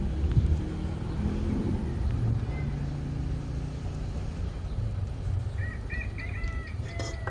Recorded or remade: recorded